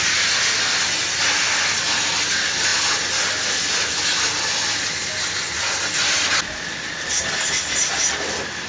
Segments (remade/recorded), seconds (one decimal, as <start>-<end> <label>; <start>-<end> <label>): 0.0-8.7 recorded